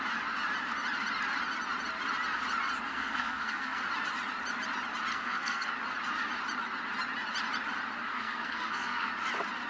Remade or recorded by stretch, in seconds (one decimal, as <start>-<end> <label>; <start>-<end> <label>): 0.0-2.9 recorded; 2.9-3.8 remade; 3.8-5.1 recorded; 5.1-5.7 remade; 5.7-8.1 recorded; 8.1-9.1 remade; 9.1-9.7 recorded